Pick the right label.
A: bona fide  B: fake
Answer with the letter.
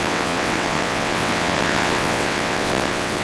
B